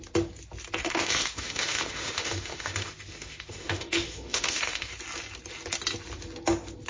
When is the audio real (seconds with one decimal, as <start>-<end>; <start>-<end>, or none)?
0.0-0.8; 4.9-6.9